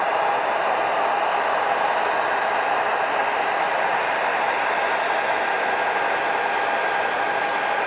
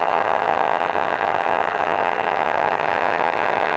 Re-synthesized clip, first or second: second